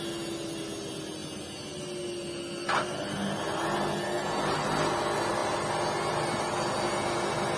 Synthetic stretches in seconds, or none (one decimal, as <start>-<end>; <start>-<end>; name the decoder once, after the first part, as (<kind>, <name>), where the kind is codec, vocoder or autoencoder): none